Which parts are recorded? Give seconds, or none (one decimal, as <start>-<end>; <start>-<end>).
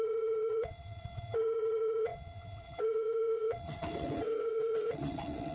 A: none